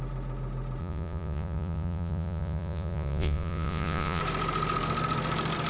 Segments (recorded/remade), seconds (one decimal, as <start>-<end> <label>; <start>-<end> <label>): 0.0-0.8 recorded; 0.8-4.2 remade; 4.2-5.7 recorded